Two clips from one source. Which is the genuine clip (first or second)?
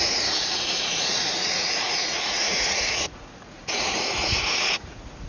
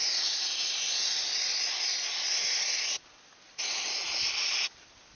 second